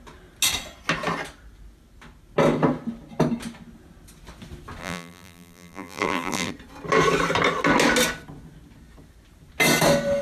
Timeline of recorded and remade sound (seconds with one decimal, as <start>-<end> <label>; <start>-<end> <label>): 0.0-4.8 recorded; 4.8-6.5 remade; 6.5-10.2 recorded